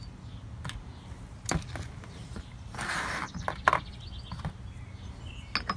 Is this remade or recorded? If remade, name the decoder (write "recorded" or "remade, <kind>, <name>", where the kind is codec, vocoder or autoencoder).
recorded